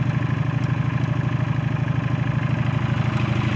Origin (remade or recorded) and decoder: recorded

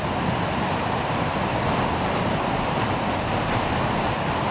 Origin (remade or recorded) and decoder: recorded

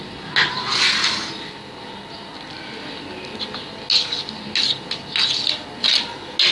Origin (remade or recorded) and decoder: recorded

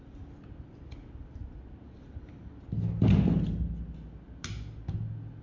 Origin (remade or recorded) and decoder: recorded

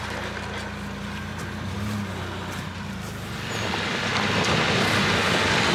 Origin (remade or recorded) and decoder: recorded